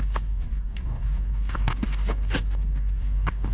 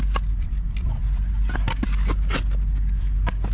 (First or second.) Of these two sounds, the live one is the second